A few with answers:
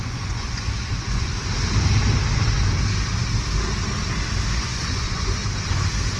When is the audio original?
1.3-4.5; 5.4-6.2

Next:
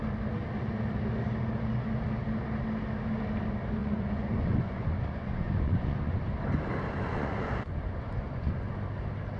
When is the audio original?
0.0-3.8; 6.2-7.1; 8.7-9.4

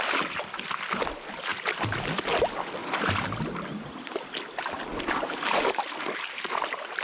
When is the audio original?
0.0-7.0

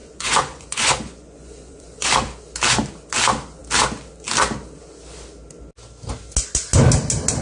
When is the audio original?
2.1-7.4

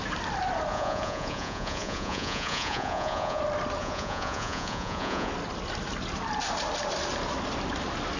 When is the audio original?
0.0-0.7; 3.4-3.8; 5.3-8.2

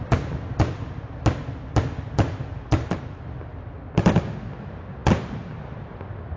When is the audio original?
0.0-6.4